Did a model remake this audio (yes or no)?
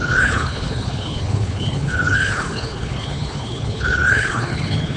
yes